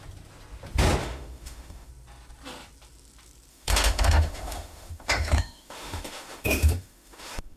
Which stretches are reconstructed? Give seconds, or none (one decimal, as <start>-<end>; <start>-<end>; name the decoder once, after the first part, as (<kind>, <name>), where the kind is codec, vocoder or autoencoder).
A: 1.0-1.9 (autoencoder, DAC-VAE); 3.5-7.6